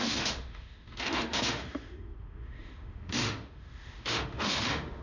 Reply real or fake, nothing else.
fake